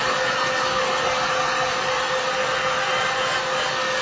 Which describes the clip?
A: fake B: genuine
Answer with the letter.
B